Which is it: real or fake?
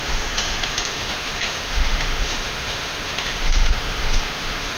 fake